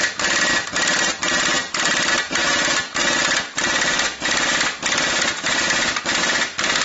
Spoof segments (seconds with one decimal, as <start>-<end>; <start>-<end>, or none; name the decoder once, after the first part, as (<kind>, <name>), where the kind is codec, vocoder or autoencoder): none